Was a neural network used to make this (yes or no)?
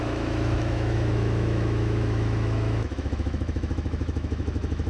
yes